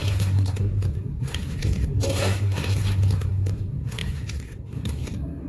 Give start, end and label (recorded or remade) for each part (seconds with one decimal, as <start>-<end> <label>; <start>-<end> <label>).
0.0-5.5 remade